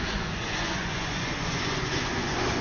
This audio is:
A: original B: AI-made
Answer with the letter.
B